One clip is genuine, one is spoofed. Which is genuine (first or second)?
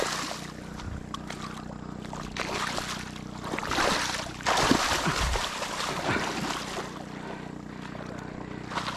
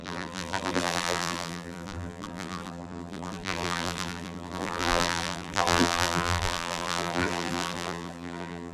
first